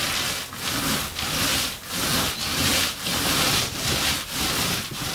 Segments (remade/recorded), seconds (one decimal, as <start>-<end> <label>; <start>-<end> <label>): 0.0-2.5 recorded; 2.5-4.1 remade; 4.1-5.1 recorded